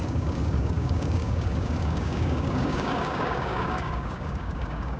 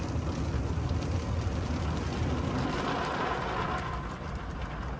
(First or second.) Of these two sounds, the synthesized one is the first